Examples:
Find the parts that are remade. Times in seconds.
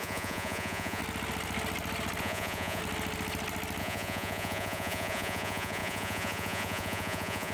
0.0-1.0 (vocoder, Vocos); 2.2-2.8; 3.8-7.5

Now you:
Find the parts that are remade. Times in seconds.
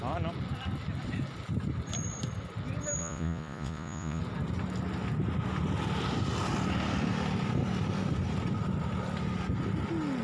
3.0-4.2 (vocoder, Vocos)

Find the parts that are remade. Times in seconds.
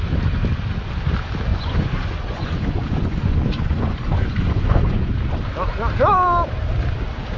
1.5-5.1 (vocoder, Vocos)